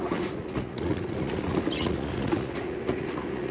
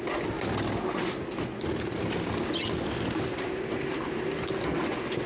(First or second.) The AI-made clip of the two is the first